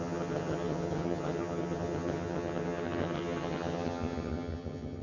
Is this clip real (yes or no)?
no